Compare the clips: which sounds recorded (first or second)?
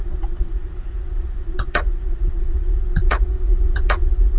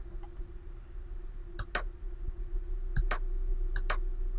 second